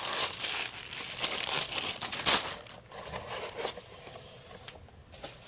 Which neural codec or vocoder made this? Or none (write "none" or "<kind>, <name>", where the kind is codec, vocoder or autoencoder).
none